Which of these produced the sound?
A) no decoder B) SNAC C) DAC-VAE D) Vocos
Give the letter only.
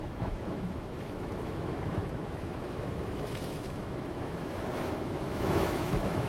C